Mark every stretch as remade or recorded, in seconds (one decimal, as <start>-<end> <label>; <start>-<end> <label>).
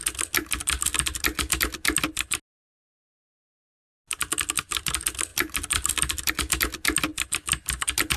0.0-5.3 recorded; 5.3-6.3 remade; 6.3-8.2 recorded